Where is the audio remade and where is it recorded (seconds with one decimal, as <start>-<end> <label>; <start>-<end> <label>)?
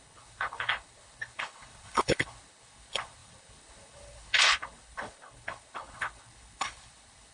0.0-7.3 remade